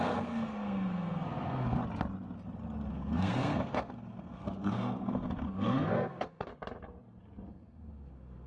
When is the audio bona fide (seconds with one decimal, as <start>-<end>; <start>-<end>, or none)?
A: 1.8-2.9; 6.5-7.5